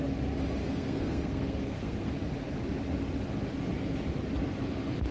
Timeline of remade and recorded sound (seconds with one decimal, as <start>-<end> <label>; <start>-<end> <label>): 0.0-0.6 recorded; 0.6-2.1 remade; 2.1-5.1 recorded